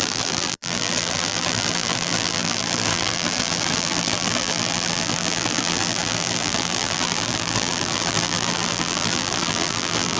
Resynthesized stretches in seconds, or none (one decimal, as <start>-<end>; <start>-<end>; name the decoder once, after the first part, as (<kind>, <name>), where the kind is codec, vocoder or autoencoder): 0.0-10.2 (vocoder, BigVGAN v2)